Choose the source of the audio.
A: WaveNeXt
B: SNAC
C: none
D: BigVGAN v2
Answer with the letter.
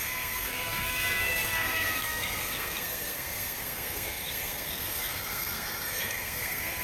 B